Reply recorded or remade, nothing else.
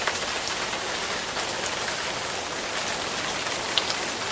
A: recorded